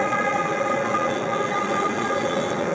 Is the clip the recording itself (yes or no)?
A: no